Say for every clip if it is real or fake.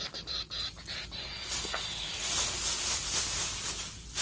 real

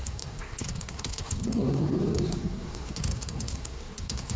fake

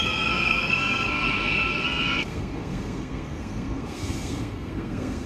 fake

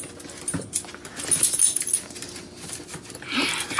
real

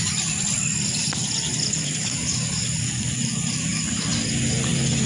real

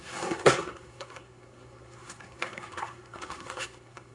fake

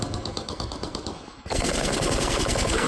fake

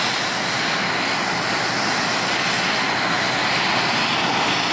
real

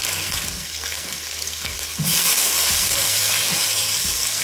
fake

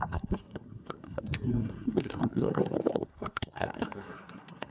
fake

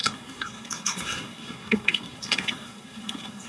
fake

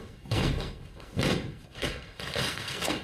fake